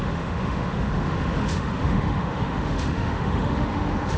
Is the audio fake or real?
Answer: fake